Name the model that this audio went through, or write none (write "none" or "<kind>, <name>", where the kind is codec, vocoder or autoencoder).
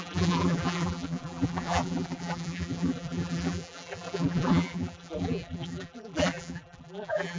vocoder, BigVGAN v2